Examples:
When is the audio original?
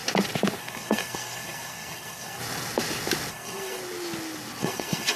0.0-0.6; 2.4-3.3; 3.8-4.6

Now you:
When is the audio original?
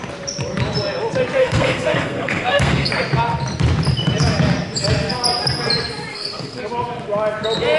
0.0-1.4; 2.9-6.1; 6.6-7.8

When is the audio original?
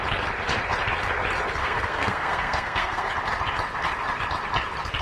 0.0-1.6; 3.1-5.0